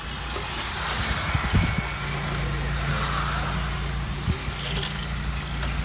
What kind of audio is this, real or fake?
real